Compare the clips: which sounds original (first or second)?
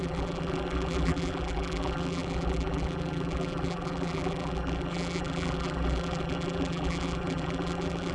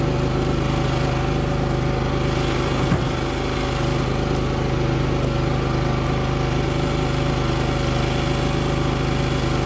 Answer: second